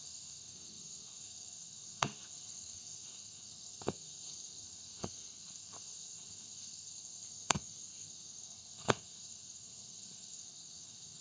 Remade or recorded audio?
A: remade